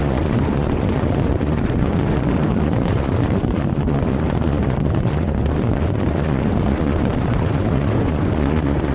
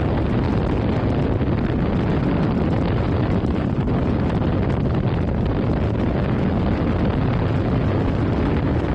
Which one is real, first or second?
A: second